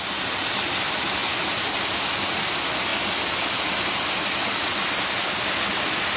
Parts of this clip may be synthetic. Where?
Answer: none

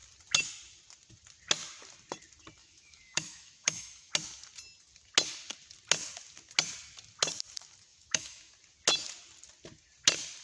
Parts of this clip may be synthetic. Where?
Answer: 2.6-4.1; 7.9-8.5

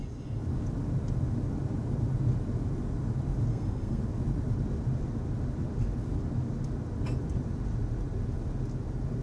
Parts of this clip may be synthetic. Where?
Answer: 3.5-4.0